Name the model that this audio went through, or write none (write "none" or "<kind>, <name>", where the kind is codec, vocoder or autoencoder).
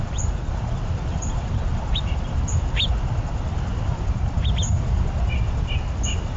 none